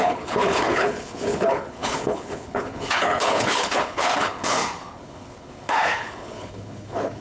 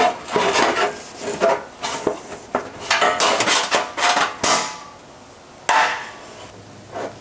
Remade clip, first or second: first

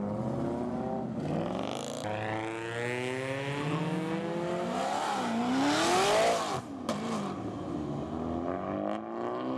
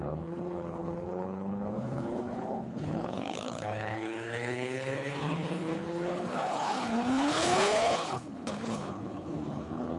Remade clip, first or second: second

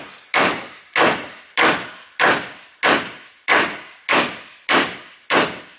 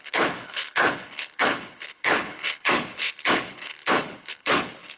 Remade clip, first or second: second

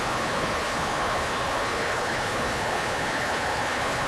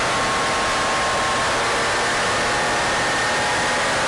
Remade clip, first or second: first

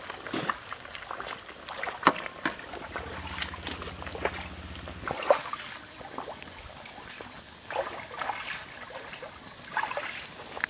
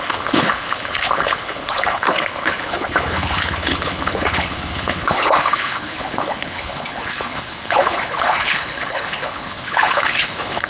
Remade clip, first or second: second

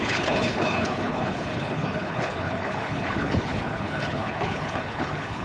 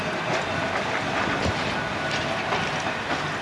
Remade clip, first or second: first